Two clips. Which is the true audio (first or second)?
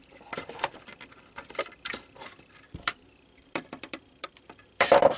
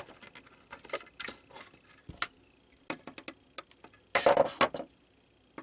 second